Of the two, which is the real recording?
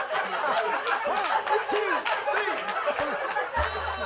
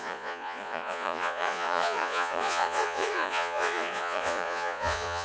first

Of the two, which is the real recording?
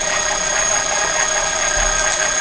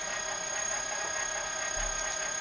second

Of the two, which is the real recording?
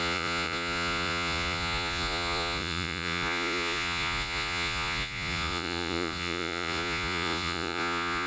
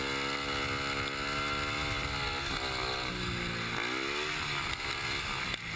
second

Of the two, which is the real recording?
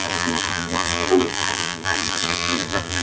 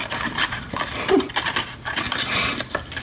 second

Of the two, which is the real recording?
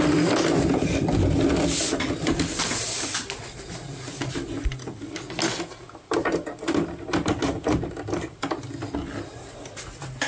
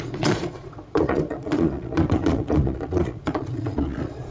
first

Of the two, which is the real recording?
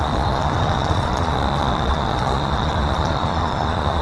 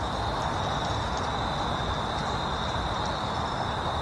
second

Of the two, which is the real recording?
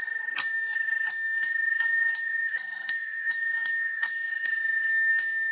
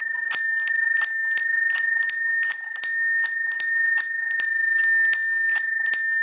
second